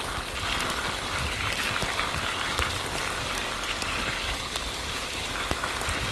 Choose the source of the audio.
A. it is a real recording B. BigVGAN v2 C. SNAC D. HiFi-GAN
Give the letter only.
A